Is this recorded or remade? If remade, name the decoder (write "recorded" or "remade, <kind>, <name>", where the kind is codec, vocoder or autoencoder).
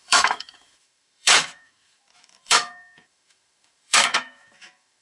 remade, autoencoder, DAC-VAE